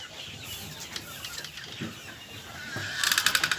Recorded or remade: recorded